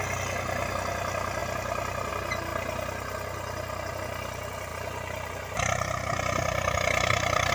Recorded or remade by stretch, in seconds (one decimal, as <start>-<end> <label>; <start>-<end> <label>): 0.0-4.7 recorded; 4.7-7.5 remade